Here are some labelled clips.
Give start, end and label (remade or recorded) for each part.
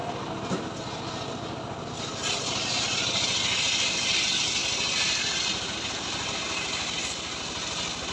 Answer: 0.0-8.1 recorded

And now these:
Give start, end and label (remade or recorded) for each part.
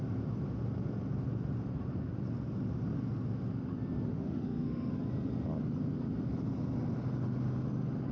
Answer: 0.0-4.1 recorded; 4.1-4.9 remade; 4.9-8.1 recorded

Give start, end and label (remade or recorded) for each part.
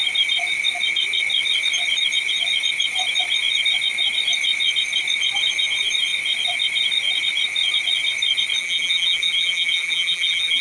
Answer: 0.0-8.6 recorded; 8.6-10.6 remade